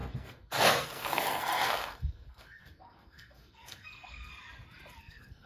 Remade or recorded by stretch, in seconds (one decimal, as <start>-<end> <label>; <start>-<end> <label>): 0.0-4.3 remade; 4.3-5.0 recorded; 5.0-5.5 remade